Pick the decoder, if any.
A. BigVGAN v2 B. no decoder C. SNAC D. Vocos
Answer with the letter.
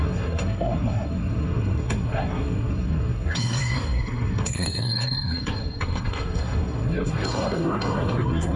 C